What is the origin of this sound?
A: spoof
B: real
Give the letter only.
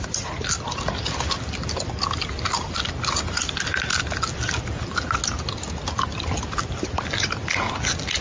B